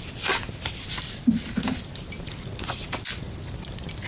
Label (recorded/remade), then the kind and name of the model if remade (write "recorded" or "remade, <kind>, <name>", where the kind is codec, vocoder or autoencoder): recorded